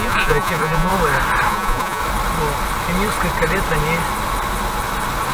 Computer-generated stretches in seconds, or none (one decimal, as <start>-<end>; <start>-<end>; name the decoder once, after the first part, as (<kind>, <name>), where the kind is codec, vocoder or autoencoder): 0.0-0.9 (vocoder, Vocos); 1.5-2.0